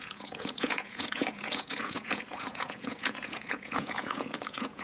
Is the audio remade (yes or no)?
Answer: yes